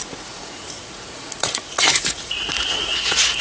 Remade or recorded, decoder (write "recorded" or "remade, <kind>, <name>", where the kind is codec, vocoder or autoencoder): remade, vocoder, Vocos